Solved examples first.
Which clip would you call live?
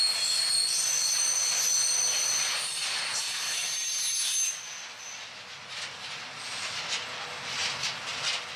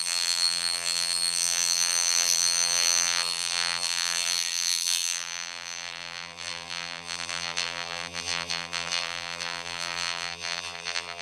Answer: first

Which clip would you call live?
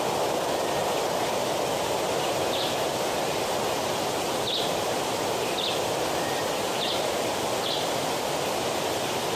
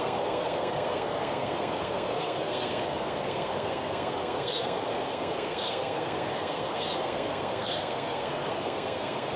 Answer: first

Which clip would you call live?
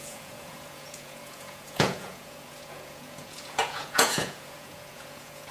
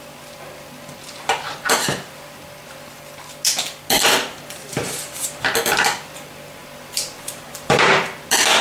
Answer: second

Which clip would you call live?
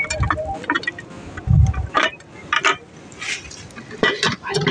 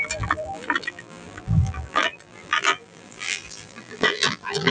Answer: first